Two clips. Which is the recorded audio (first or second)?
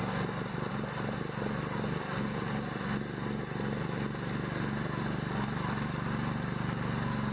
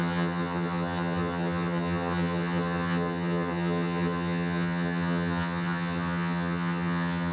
first